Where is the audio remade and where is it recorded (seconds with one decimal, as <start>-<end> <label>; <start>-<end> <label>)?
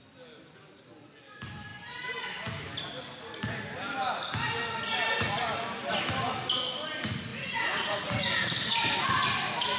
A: 0.0-7.3 recorded; 7.3-8.2 remade; 8.2-9.8 recorded